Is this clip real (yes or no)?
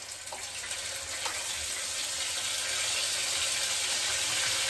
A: yes